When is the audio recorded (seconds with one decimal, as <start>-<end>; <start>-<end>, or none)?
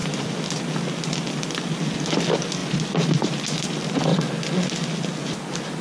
0.7-5.8